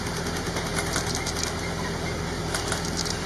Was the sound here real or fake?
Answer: real